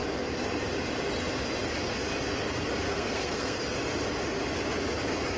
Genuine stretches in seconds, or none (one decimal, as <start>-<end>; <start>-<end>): 0.0-2.9; 3.6-5.4